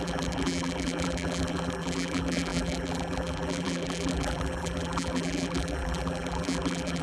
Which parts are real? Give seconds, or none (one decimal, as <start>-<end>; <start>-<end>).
none